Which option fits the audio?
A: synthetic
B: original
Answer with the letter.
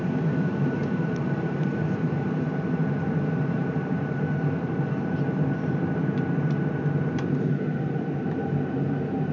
A